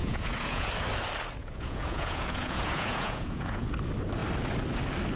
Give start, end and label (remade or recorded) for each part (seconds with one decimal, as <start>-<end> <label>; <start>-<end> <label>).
0.0-0.7 remade; 0.7-1.4 recorded; 1.4-3.7 remade; 3.7-5.2 recorded